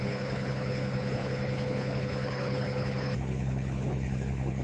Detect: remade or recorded remade